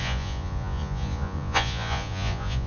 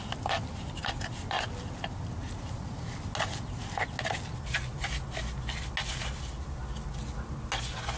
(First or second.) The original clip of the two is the second